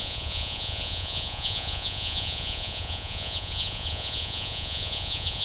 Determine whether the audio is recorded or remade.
remade